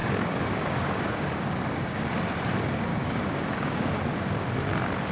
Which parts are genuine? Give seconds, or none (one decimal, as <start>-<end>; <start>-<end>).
2.0-2.9; 3.9-5.1